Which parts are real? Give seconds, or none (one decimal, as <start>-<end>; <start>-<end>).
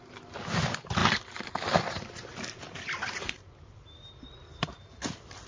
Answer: 0.0-5.5